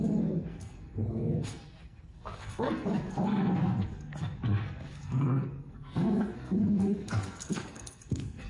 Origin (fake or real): fake